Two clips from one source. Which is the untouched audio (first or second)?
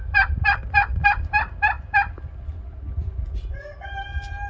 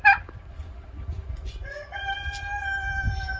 first